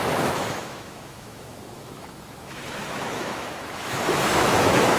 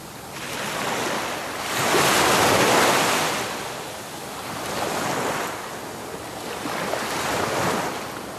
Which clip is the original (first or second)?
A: second